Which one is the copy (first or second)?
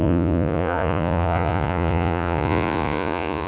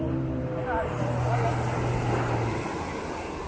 first